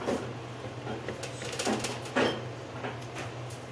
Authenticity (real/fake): real